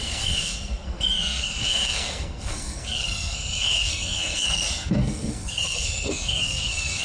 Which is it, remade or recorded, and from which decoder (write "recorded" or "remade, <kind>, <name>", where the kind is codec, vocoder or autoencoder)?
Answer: remade, codec, SNAC